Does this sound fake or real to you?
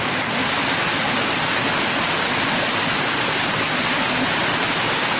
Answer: real